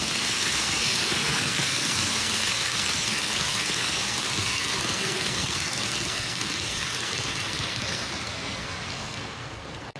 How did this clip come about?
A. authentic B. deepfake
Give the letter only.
B